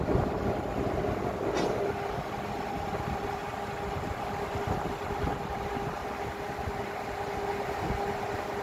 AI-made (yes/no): no